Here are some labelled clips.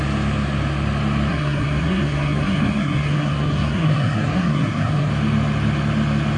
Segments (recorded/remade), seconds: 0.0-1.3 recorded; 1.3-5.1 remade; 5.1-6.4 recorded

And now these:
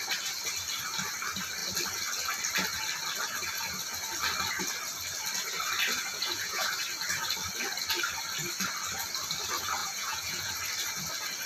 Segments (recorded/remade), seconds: 0.0-6.1 recorded; 6.1-6.7 remade; 6.7-9.8 recorded; 9.8-10.5 remade; 10.5-11.5 recorded

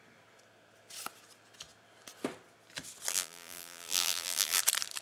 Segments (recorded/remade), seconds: 0.0-3.1 recorded; 3.1-4.6 remade; 4.6-5.0 recorded